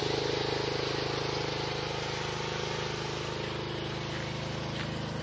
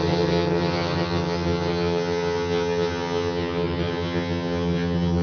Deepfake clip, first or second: second